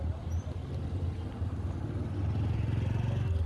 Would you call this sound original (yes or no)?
yes